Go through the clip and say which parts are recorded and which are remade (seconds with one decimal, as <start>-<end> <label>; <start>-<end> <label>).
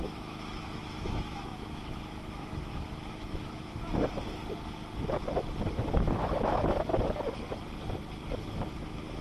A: 0.0-4.4 remade; 4.4-5.7 recorded; 5.7-6.9 remade; 6.9-9.2 recorded